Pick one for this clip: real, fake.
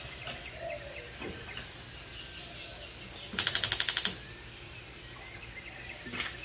real